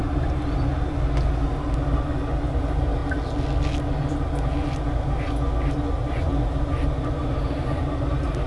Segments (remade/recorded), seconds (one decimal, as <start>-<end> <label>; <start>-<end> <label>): 0.0-0.7 remade; 0.7-6.0 recorded; 6.0-8.5 remade